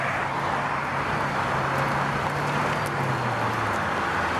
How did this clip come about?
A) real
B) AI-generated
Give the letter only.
A